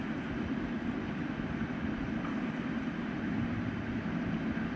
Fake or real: real